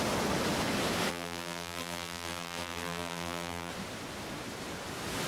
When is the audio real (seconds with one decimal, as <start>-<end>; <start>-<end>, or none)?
0.0-1.1; 3.7-5.3